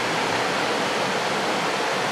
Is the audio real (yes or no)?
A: yes